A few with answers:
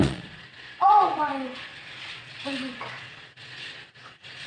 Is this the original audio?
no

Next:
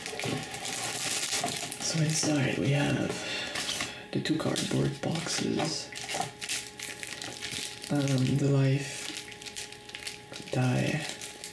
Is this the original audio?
yes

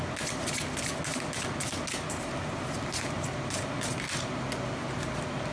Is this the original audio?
yes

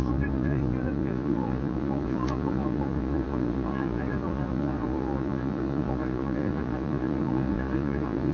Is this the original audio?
no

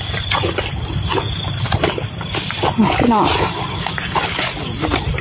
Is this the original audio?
no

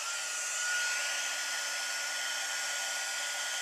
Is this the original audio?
yes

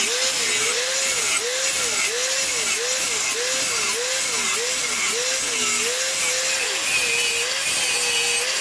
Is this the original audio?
yes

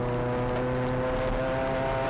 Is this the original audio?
yes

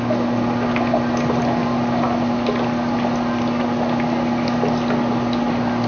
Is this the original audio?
yes